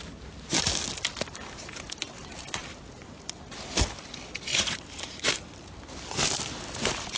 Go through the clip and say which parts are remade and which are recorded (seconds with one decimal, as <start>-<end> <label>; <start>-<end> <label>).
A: 0.0-4.5 recorded; 4.5-5.3 remade; 5.3-7.2 recorded